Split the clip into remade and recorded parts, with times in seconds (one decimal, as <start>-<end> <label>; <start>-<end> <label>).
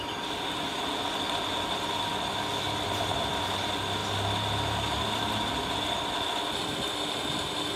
0.0-7.8 recorded